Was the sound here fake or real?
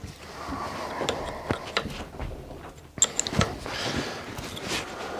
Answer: real